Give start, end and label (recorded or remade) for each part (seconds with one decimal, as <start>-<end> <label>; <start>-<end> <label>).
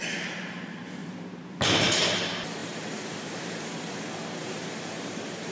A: 0.0-1.0 recorded; 1.0-1.5 remade; 1.5-2.6 recorded; 2.6-3.9 remade; 3.9-4.4 recorded; 4.4-5.5 remade